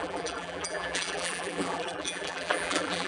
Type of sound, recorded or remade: remade